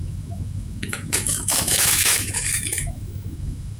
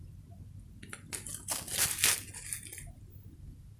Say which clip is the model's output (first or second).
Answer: first